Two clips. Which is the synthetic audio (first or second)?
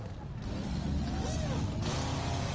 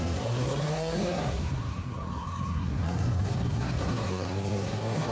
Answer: second